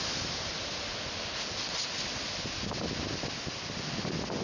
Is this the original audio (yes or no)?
yes